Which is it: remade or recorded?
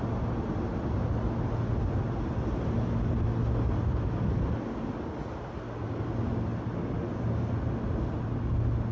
recorded